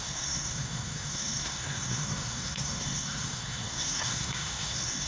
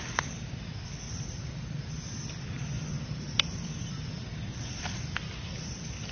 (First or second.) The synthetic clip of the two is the first